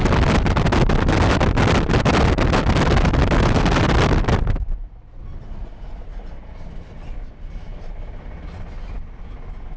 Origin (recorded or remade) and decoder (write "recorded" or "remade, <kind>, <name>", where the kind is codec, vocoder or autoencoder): recorded